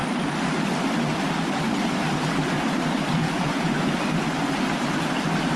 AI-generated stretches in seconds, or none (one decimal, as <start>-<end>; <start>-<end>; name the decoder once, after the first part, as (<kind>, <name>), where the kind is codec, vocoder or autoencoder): 3.2-3.7 (vocoder, Vocos)